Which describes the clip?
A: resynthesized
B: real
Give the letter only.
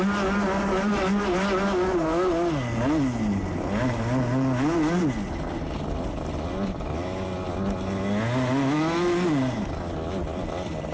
B